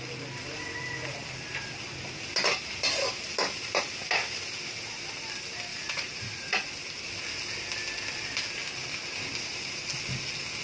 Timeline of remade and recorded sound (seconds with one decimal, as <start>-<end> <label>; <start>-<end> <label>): 0.0-5.7 recorded; 5.7-6.7 remade; 6.7-10.6 recorded

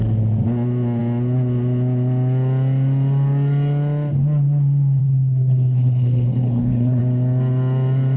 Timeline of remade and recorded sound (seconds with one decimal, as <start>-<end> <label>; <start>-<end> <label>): 0.0-5.0 recorded; 5.0-7.0 remade; 7.0-8.2 recorded

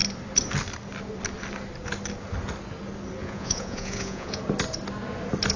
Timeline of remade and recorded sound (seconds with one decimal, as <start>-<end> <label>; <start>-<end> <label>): 0.0-3.2 recorded; 3.2-4.4 remade; 4.4-5.6 recorded

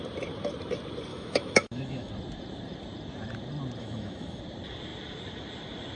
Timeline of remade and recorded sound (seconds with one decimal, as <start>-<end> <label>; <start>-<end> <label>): 0.0-1.1 recorded; 1.1-2.1 remade; 2.1-3.8 recorded; 3.8-4.4 remade; 4.4-6.0 recorded

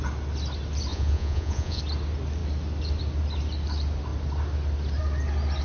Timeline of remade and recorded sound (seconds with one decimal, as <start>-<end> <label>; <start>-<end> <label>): 0.0-0.9 recorded; 0.9-1.8 remade; 1.8-5.6 recorded

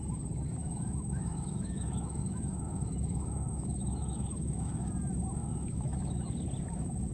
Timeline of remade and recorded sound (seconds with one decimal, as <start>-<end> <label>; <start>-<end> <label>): 0.0-0.6 recorded; 0.6-4.9 remade; 4.9-5.4 recorded; 5.4-6.3 remade; 6.3-7.1 recorded

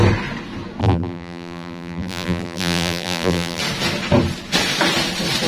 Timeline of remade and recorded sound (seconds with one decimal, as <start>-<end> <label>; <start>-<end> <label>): 0.0-0.8 recorded; 0.8-3.6 remade; 3.6-5.5 recorded

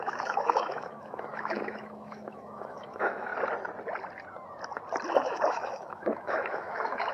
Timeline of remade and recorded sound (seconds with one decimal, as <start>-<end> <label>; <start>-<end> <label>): 0.0-3.3 remade; 3.3-5.1 recorded; 5.1-7.1 remade